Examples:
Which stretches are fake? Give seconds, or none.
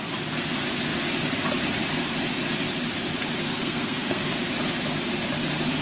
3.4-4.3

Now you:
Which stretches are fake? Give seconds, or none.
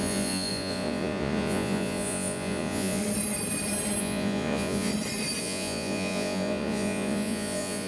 0.0-3.0; 4.0-4.9; 5.4-7.9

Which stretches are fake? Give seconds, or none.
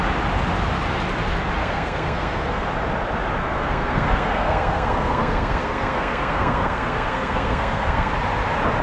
1.6-2.6; 3.4-8.1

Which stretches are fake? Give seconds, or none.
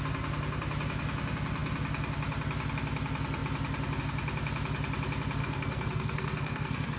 5.4-7.0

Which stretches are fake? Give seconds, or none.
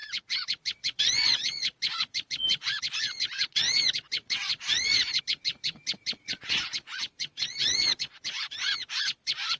0.0-9.6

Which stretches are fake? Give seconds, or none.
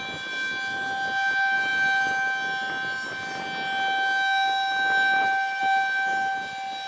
none